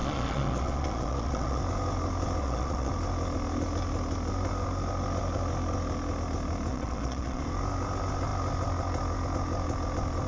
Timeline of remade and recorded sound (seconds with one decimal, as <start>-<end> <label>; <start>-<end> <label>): 0.0-1.6 remade; 1.6-2.4 recorded; 2.4-2.9 remade; 2.9-6.7 recorded; 6.7-7.4 remade; 7.4-10.3 recorded